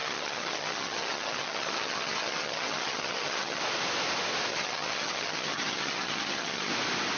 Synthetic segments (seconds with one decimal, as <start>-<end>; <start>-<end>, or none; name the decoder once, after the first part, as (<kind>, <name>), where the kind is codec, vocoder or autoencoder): 0.0-3.6 (vocoder, HiFi-GAN); 4.5-6.7